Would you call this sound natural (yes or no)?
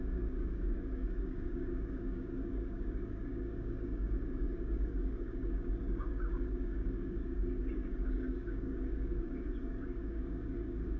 no